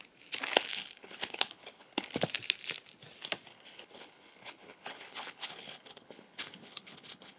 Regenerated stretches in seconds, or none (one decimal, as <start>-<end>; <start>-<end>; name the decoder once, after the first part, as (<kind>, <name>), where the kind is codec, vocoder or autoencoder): 0.7-2.1 (codec, HILCodec); 3.5-7.4